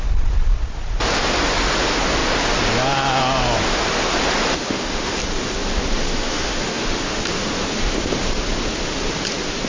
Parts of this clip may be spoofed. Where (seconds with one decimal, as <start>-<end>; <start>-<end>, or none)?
4.6-5.2; 6.1-7.2